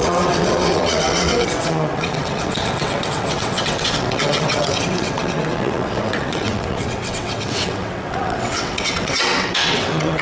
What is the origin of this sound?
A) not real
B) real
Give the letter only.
A